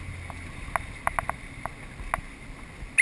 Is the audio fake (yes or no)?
no